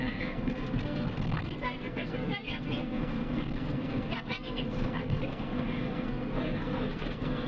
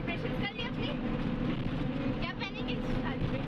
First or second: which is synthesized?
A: first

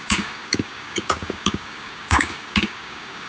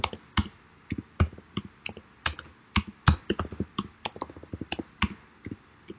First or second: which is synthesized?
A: first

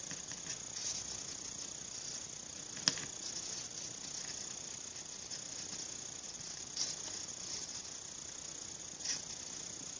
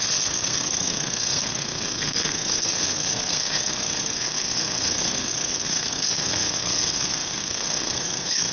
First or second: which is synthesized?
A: second